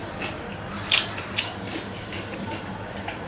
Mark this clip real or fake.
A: real